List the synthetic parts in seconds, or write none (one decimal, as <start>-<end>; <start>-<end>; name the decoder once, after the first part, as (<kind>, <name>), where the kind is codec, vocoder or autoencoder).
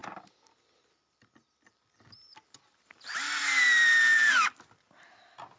0.0-3.4 (vocoder, BigVGAN v2); 4.1-4.6